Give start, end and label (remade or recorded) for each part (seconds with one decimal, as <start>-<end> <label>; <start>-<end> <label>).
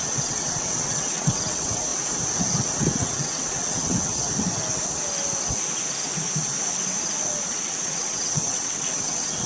0.0-1.9 remade; 1.9-2.6 recorded; 2.6-4.3 remade; 4.3-7.5 recorded; 7.5-9.5 remade